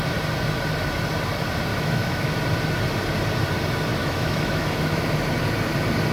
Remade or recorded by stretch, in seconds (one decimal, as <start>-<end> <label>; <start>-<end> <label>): 0.0-1.7 recorded; 1.7-2.4 remade; 2.4-4.0 recorded; 4.0-5.0 remade; 5.0-6.1 recorded